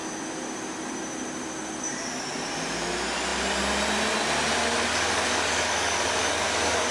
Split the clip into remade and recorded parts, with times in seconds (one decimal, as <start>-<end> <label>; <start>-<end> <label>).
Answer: 0.0-4.9 recorded; 4.9-6.9 remade